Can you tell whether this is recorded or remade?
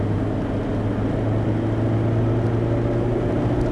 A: recorded